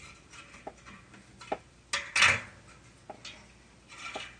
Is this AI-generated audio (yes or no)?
no